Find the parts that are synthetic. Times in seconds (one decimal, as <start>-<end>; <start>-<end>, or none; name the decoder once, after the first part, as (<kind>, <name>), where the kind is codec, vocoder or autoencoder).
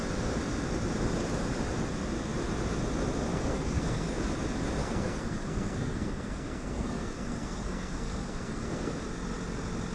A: 3.3-4.2 (codec, SNAC); 4.8-8.9